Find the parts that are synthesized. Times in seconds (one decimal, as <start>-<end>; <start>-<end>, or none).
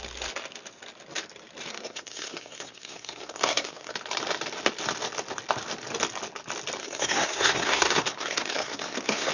1.7-3.9; 6.8-9.3